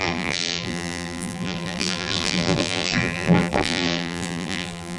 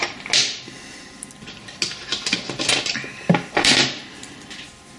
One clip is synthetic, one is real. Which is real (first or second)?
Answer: second